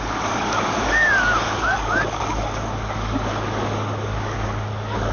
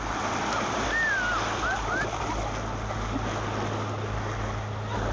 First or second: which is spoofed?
first